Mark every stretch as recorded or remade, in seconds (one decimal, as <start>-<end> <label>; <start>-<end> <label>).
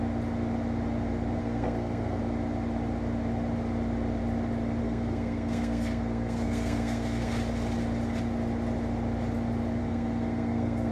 0.0-1.4 recorded; 1.4-2.2 remade; 2.2-4.8 recorded; 4.8-7.3 remade; 7.3-9.8 recorded; 9.8-10.9 remade